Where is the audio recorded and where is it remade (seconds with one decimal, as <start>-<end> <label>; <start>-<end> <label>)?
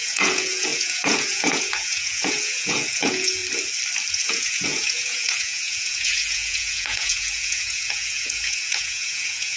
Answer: 0.0-3.4 remade; 3.4-4.1 recorded; 4.1-9.6 remade